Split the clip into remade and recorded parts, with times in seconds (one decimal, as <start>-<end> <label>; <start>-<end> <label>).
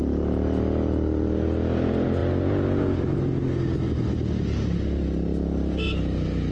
0.0-6.5 recorded